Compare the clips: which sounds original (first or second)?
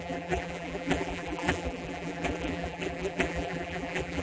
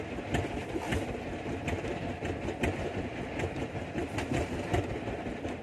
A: second